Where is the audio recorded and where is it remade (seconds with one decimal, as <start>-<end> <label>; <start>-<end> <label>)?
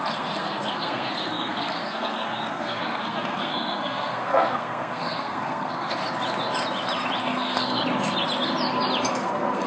0.0-6.0 remade; 6.0-7.2 recorded; 7.2-7.8 remade; 7.8-9.1 recorded; 9.1-9.7 remade